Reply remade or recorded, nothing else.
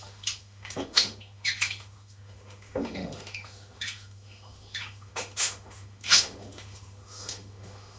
remade